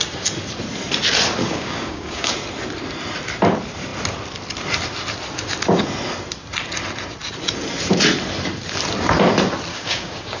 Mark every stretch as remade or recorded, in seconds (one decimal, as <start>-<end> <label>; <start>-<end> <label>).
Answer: 0.0-1.4 recorded; 1.4-2.3 remade; 2.3-9.7 recorded; 9.7-10.4 remade